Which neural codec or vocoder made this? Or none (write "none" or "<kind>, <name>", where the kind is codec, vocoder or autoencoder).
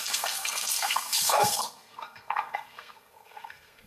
codec, SNAC